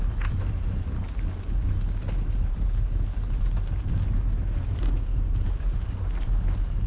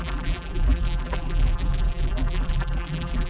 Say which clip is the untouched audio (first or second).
first